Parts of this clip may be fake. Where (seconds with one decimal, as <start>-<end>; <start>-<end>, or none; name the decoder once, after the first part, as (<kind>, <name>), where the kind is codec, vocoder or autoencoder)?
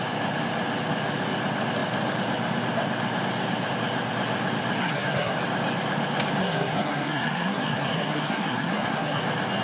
4.8-5.4 (codec, SNAC); 6.4-9.2